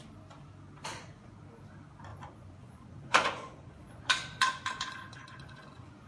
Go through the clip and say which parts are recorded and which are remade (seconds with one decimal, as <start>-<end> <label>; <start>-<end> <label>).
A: 0.0-0.9 recorded; 0.9-1.4 remade; 1.4-2.1 recorded; 2.1-6.1 remade